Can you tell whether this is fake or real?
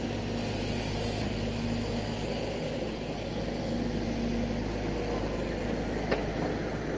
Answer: real